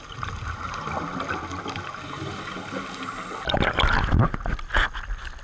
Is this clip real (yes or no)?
yes